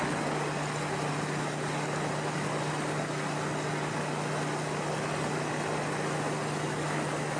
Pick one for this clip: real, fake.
real